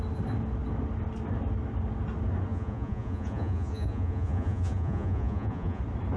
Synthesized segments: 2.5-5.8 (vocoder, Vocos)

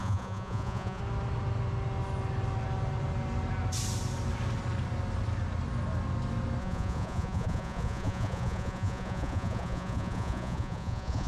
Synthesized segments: 0.0-1.0 (vocoder, Vocos); 6.6-11.3

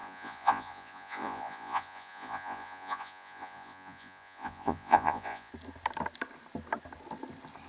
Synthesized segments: 0.0-5.5 (vocoder, Vocos)

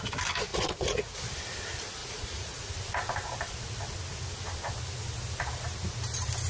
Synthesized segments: 0.5-1.2 (vocoder, Vocos); 2.0-2.7

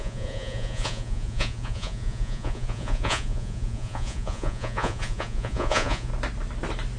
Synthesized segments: 0.0-6.1 (vocoder, Vocos)

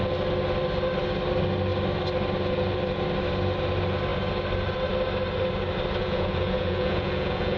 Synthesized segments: 6.0-7.6 (vocoder, Vocos)

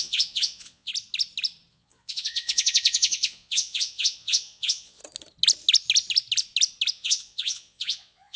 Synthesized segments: 0.0-0.9 (vocoder, Vocos); 1.7-5.0; 6.9-8.4

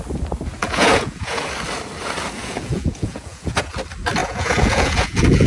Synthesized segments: 0.6-1.5 (vocoder, Vocos); 2.4-3.7; 4.2-5.5